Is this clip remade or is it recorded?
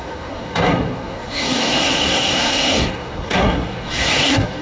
remade